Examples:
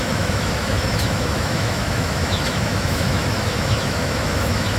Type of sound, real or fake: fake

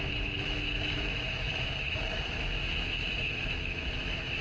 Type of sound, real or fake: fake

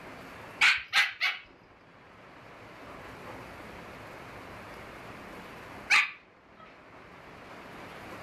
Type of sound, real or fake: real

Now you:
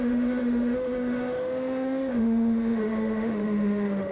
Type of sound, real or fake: fake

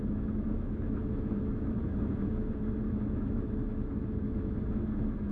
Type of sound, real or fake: fake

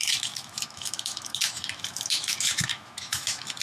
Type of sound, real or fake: fake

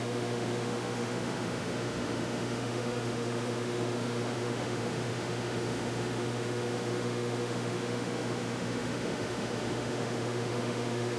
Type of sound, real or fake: fake